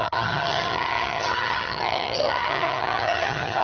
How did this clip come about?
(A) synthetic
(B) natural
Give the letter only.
A